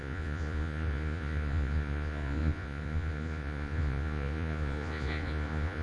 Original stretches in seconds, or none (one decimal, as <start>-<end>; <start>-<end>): none